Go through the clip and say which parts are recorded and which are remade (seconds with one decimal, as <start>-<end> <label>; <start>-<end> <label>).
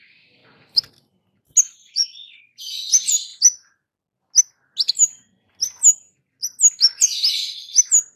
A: 0.0-1.8 recorded; 1.8-2.4 remade; 2.4-8.2 recorded